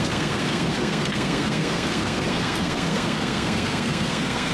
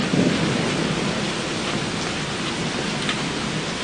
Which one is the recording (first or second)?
second